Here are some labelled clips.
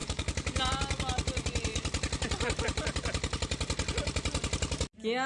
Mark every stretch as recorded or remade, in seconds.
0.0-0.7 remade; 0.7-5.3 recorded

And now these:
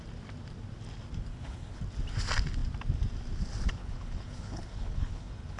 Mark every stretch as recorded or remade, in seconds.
0.0-1.3 recorded; 1.3-1.8 remade; 1.8-3.8 recorded; 3.8-5.6 remade

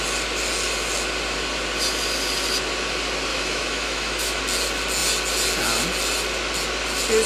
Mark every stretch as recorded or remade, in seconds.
0.0-3.3 recorded; 3.3-4.4 remade; 4.4-7.3 recorded

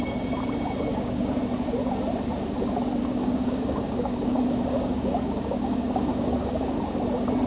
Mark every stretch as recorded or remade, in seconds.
0.0-0.9 recorded; 0.9-1.4 remade; 1.4-3.0 recorded; 3.0-6.8 remade; 6.8-7.5 recorded

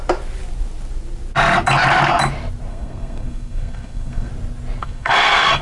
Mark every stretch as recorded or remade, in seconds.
0.0-2.7 recorded; 2.7-4.3 remade; 4.3-4.8 recorded; 4.8-5.6 remade